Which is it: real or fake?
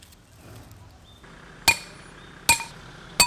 real